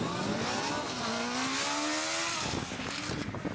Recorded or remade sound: recorded